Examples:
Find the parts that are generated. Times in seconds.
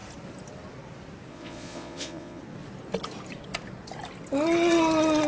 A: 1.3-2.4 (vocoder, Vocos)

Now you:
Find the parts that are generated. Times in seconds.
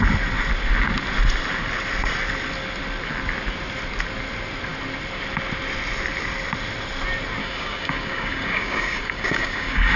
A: 7.4-10.0 (codec, DAC)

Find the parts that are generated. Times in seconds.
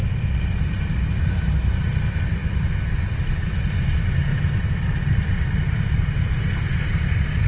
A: 1.2-2.4 (vocoder, BigVGAN v2); 3.5-4.3; 4.9-7.5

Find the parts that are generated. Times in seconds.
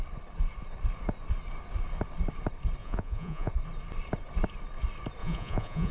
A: 2.8-3.5 (vocoder, Vocos); 5.2-5.9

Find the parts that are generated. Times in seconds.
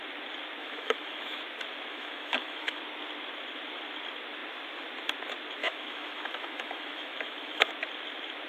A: 0.6-1.4 (autoencoder, DAC-VAE); 1.9-2.8; 5.6-7.7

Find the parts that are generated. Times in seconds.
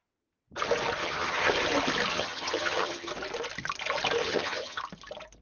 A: 1.0-1.5 (vocoder, HiFi-GAN); 2.1-3.1; 4.2-4.8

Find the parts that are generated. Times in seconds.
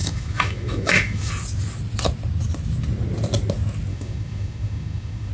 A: 0.0-1.3 (autoencoder, DAC-VAE); 3.9-5.3